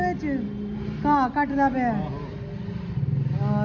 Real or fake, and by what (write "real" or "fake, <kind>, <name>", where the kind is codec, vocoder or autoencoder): real